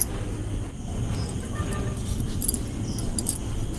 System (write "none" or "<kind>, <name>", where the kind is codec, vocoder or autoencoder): none